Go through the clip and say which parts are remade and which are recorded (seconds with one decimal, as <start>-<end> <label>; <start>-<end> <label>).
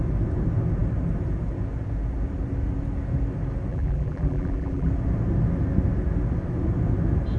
0.0-3.7 recorded; 3.7-4.9 remade; 4.9-7.4 recorded